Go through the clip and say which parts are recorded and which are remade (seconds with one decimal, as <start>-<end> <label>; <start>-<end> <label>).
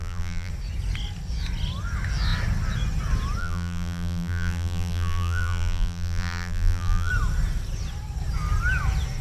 0.0-0.5 remade; 0.5-3.4 recorded; 3.4-7.1 remade; 7.1-9.2 recorded